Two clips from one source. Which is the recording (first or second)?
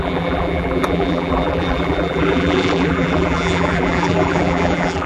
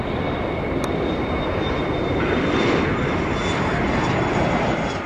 second